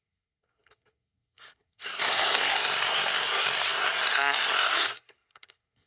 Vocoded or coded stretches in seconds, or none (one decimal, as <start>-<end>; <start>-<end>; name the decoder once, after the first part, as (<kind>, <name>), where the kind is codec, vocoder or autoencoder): 0.0-5.9 (codec, SNAC)